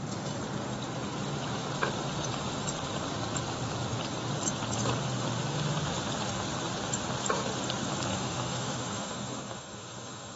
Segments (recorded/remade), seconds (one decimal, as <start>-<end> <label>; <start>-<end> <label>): 0.0-8.1 recorded; 8.1-10.4 remade